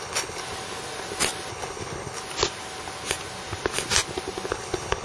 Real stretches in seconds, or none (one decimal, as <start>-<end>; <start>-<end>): 0.4-1.5; 2.2-4.5